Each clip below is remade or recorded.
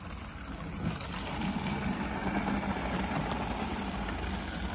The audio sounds recorded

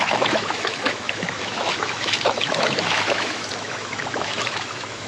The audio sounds remade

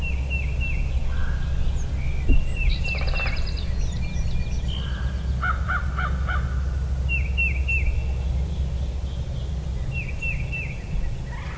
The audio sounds recorded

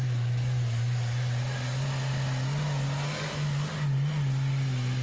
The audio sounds recorded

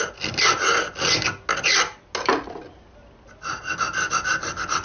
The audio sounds recorded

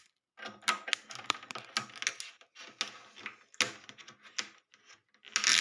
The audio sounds recorded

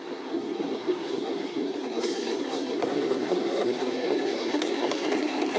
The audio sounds remade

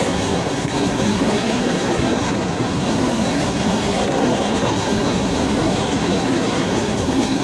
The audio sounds remade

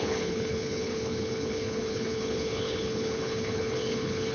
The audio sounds remade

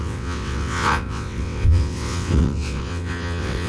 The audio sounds remade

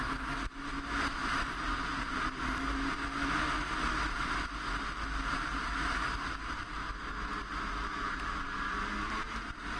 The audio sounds recorded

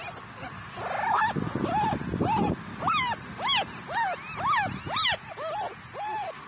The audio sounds recorded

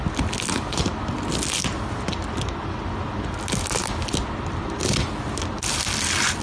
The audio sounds recorded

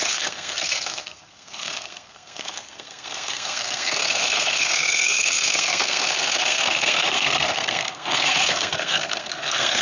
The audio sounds remade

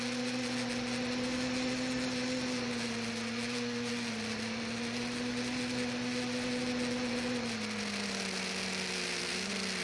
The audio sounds recorded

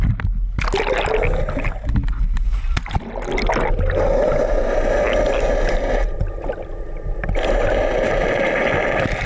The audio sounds recorded